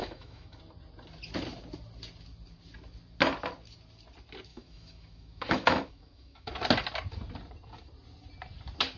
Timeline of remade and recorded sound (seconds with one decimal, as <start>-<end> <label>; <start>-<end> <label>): 0.0-0.6 remade; 0.6-4.5 recorded; 4.5-6.5 remade; 6.5-9.0 recorded